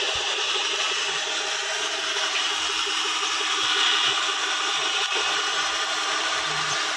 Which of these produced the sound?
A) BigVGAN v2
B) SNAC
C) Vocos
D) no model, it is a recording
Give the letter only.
A